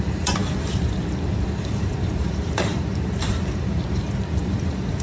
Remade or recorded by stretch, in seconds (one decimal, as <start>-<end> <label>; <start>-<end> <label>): 0.0-5.0 remade